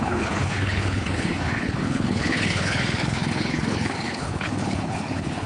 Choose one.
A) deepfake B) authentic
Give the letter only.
A